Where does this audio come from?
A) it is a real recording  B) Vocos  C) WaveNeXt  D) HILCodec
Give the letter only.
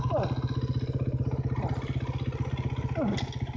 A